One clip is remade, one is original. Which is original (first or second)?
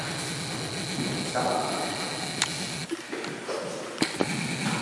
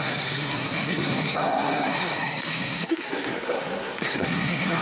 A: first